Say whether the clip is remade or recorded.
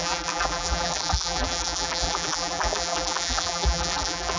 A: remade